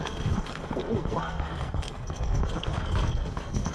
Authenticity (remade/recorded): remade